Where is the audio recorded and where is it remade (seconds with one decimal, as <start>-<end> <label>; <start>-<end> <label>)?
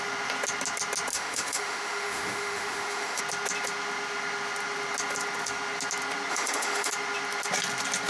0.0-1.1 recorded; 1.1-3.2 remade; 3.2-6.3 recorded; 6.3-6.9 remade; 6.9-8.1 recorded